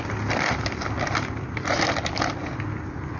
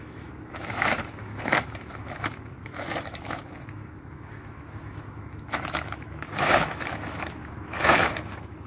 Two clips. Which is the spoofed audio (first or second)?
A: second